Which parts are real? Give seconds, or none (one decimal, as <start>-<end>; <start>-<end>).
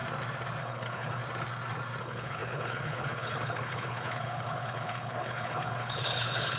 0.0-0.6; 1.2-2.0